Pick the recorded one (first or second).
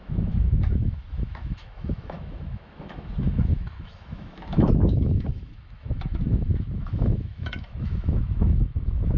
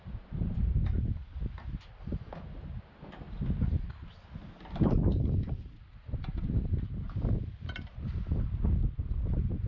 second